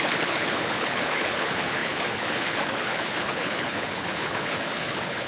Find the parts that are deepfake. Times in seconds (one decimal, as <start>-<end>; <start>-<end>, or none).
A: 0.0-5.3